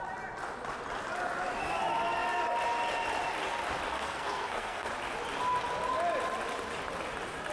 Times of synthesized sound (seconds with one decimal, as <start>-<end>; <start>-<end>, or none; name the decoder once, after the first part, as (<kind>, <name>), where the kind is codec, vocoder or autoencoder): 3.9-4.9 (codec, SNAC)